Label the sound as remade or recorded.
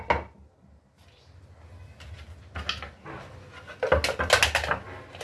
recorded